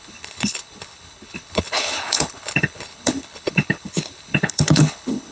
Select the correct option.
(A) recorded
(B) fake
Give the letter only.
B